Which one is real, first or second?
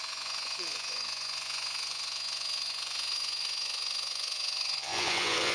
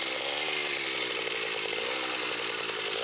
second